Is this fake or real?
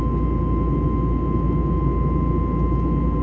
real